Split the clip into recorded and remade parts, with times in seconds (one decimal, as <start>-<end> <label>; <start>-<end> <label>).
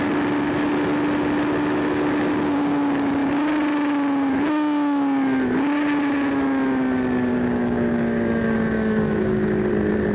0.0-7.3 recorded; 7.3-9.7 remade; 9.7-10.1 recorded